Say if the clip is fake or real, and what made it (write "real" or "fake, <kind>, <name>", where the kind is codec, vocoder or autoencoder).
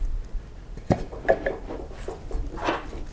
real